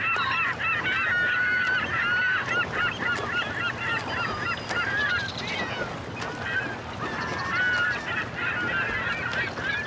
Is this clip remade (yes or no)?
no